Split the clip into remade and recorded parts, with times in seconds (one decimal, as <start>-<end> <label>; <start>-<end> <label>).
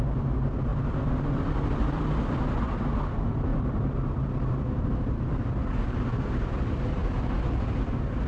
0.0-0.7 recorded; 0.7-2.0 remade; 2.0-8.3 recorded